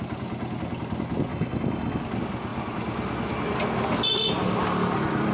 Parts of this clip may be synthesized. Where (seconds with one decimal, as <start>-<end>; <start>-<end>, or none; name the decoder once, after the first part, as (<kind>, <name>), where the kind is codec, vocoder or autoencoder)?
1.3-2.0 (autoencoder, DAC-VAE)